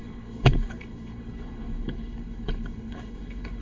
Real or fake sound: fake